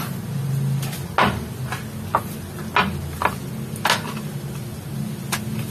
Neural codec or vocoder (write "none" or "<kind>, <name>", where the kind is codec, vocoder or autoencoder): none